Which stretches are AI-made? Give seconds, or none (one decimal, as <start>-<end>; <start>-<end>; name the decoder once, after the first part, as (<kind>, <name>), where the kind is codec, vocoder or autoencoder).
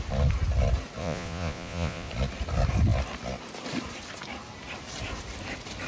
1.0-2.1 (vocoder, Vocos)